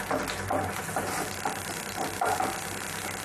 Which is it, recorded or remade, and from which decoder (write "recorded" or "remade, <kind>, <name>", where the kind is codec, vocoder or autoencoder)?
recorded